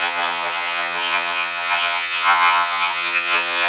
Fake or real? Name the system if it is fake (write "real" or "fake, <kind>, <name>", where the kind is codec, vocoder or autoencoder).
fake, vocoder, HiFi-GAN